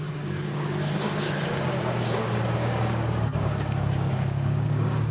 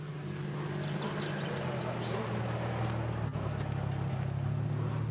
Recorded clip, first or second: second